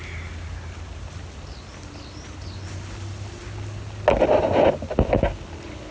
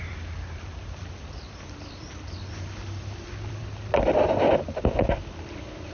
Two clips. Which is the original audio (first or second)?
first